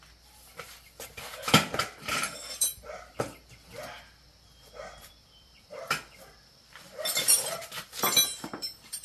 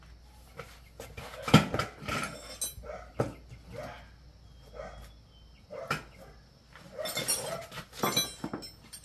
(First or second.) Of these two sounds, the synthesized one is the first